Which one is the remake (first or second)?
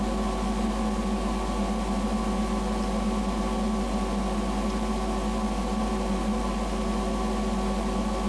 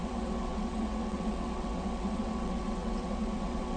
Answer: second